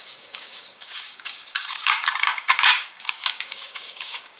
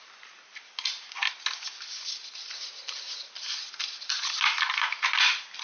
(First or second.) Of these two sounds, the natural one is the second